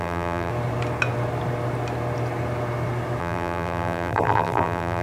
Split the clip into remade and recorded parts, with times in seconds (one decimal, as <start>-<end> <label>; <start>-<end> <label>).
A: 0.0-0.5 remade; 0.5-3.2 recorded; 3.2-5.0 remade